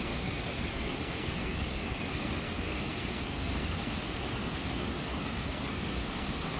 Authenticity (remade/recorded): remade